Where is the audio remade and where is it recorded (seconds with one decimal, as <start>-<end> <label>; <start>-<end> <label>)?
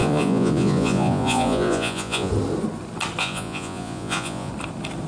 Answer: 0.0-2.3 remade; 2.3-3.2 recorded; 3.2-4.5 remade; 4.5-5.1 recorded